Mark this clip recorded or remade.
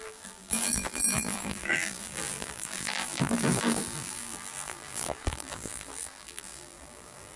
remade